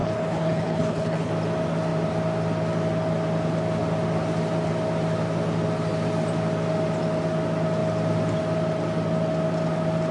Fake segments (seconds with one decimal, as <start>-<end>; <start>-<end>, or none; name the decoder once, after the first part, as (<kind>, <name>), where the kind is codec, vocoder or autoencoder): 0.0-1.3 (codec, HILCodec)